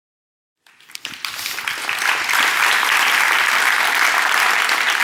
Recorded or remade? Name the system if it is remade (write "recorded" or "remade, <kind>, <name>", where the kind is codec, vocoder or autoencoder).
remade, vocoder, BigVGAN v2